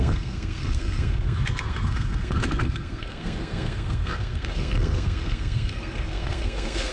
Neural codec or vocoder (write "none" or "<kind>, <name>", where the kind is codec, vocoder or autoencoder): codec, SNAC